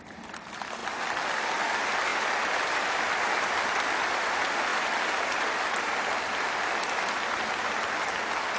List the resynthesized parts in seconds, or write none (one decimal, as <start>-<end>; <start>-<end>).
none